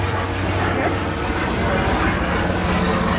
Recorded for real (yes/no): yes